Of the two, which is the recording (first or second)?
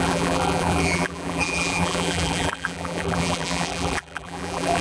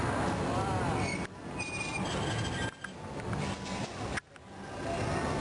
second